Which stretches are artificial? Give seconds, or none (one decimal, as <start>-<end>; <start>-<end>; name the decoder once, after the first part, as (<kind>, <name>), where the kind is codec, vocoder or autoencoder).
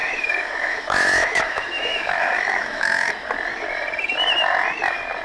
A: 0.0-3.1 (autoencoder, DAC-VAE)